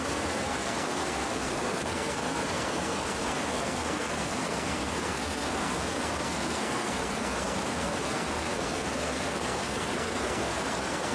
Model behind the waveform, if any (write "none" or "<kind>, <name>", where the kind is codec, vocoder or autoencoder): codec, SNAC